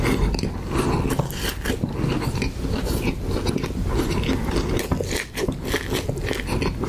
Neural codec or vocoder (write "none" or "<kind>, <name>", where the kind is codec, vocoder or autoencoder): none